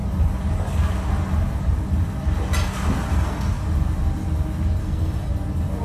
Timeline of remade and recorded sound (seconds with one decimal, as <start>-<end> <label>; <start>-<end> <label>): 0.0-3.1 recorded; 3.1-3.6 remade; 3.6-4.8 recorded; 4.8-5.3 remade; 5.3-5.8 recorded